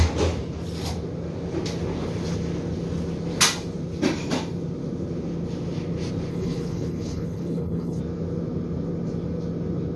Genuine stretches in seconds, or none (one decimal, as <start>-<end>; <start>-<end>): 0.0-6.3; 8.0-10.0